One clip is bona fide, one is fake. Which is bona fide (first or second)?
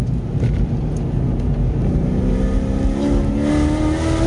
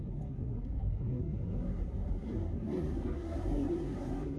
first